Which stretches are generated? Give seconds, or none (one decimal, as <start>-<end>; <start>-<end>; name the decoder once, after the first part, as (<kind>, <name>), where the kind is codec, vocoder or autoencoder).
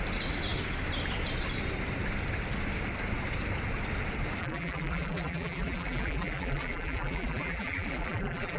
4.4-8.6 (vocoder, BigVGAN v2)